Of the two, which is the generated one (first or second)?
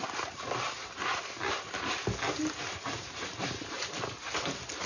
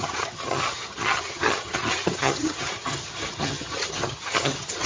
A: second